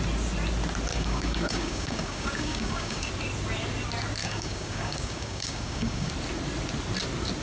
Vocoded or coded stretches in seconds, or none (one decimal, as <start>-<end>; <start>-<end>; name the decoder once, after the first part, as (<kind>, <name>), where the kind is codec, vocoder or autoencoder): 0.9-3.1 (codec, DAC); 4.2-6.1